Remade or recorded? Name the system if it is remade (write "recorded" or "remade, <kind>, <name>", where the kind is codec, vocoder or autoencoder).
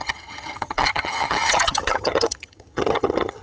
remade, vocoder, HiFi-GAN